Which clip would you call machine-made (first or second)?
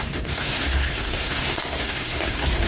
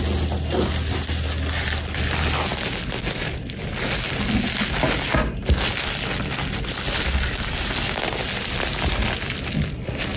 first